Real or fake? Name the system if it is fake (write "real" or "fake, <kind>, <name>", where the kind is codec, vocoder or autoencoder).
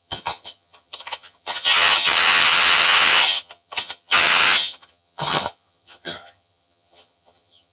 fake, vocoder, HiFi-GAN